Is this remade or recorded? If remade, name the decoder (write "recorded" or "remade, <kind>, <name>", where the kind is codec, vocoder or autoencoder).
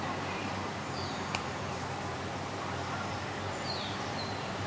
remade, vocoder, BigVGAN v2